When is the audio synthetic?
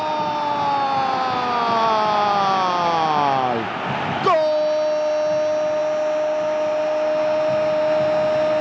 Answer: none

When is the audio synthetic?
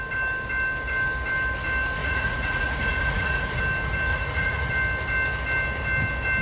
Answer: 2.0-3.6 (vocoder, Vocos); 4.1-4.7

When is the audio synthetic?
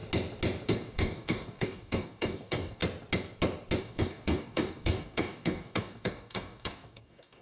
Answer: 0.7-2.8 (codec, DAC); 3.8-7.4